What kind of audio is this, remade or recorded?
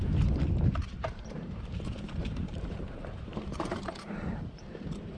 remade